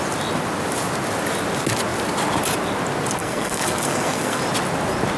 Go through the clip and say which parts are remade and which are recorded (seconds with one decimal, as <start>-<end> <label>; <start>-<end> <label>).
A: 0.0-3.2 recorded; 3.2-4.4 remade; 4.4-5.2 recorded